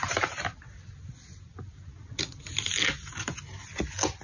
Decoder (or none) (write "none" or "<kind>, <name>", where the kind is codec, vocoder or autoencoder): none